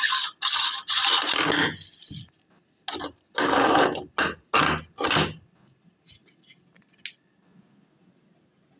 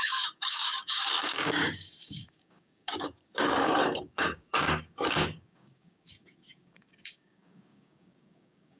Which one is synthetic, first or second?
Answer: second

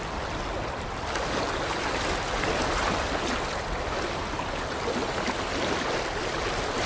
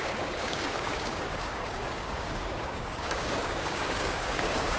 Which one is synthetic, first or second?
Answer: second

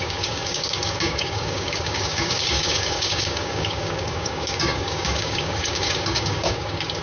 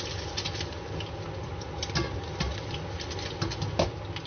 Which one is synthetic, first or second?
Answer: first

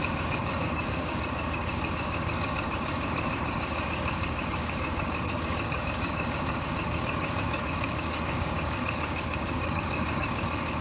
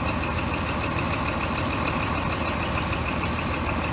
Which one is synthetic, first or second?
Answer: first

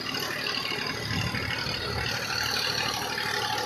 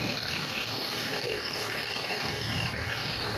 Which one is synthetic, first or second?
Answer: second